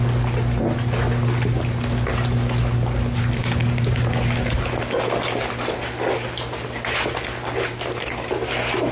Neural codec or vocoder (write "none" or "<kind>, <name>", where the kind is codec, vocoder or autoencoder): none